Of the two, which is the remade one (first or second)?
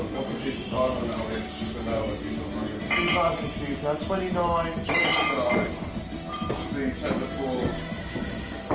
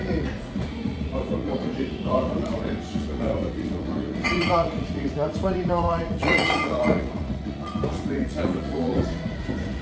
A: second